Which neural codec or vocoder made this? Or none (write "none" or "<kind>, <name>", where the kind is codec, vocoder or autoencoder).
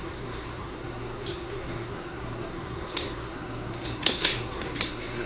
codec, SNAC